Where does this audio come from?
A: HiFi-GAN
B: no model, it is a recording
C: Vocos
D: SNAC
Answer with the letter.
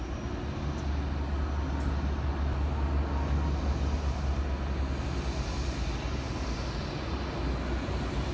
B